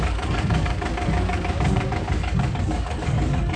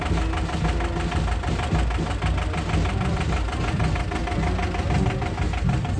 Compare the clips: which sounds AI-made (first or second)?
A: first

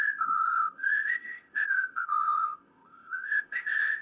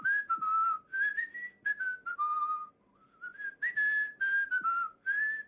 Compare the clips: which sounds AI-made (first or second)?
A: first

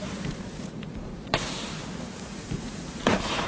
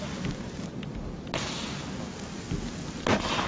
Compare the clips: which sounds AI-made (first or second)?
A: first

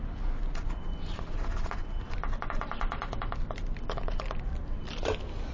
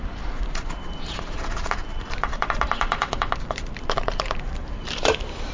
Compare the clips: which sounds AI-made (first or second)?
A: second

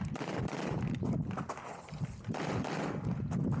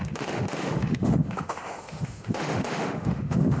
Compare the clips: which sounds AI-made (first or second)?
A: second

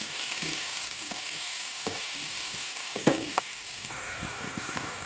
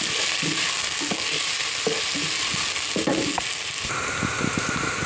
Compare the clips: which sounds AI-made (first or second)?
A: first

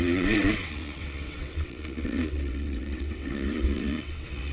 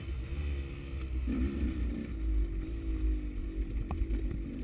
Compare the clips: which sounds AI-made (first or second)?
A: first